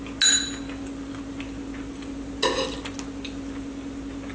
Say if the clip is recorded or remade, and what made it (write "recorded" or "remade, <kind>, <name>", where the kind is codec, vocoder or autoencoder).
recorded